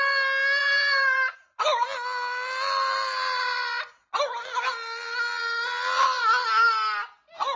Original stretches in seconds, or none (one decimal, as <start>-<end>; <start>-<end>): 0.0-0.6; 1.3-7.6